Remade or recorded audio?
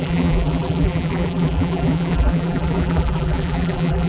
remade